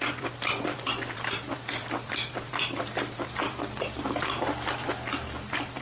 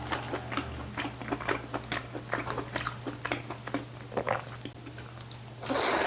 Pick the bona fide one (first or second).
second